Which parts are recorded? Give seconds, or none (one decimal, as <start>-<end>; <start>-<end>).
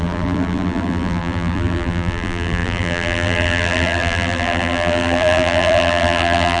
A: none